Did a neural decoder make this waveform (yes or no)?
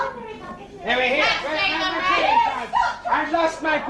no